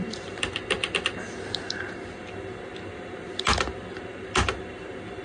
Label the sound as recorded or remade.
recorded